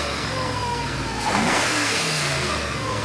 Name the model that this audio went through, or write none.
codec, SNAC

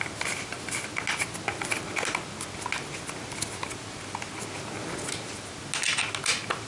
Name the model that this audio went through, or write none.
none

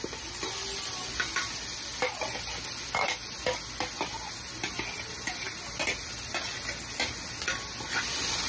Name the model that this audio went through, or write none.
none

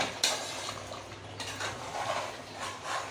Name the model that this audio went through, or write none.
none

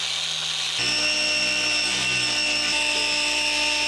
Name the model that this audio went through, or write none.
none